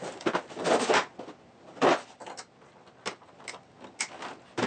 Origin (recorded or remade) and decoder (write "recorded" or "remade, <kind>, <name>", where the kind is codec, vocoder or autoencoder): recorded